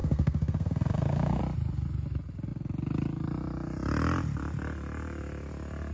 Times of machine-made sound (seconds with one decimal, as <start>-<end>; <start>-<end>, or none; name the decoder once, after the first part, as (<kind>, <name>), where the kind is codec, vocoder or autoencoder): 0.0-1.4 (codec, SNAC)